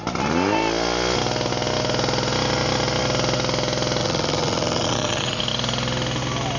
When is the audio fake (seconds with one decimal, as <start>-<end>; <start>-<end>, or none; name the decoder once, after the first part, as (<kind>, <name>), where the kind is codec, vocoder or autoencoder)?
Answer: 4.0-5.4 (vocoder, Vocos)